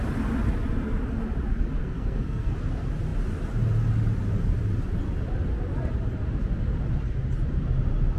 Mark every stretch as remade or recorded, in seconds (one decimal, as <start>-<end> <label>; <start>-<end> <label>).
0.0-1.8 recorded; 1.8-2.5 remade; 2.5-8.2 recorded